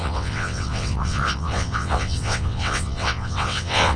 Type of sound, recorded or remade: remade